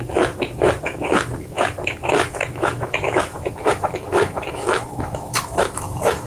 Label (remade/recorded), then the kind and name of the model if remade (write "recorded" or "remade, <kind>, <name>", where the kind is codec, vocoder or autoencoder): remade, autoencoder, DAC-VAE